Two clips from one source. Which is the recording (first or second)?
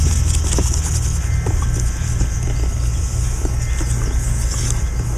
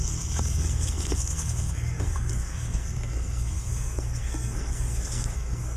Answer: first